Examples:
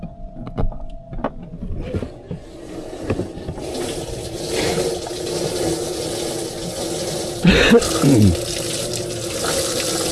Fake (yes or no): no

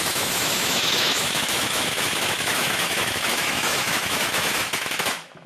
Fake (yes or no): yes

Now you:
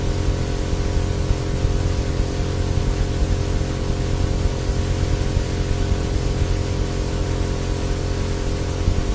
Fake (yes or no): no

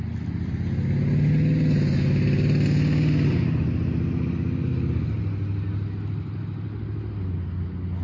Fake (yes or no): no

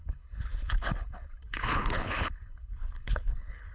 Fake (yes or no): yes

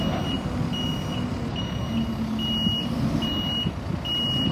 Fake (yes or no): no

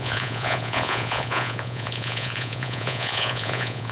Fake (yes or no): yes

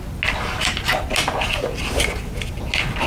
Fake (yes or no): no